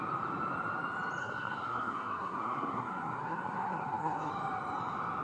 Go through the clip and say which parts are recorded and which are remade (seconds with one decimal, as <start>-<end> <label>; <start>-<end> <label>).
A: 0.0-1.2 recorded; 1.2-4.3 remade; 4.3-5.2 recorded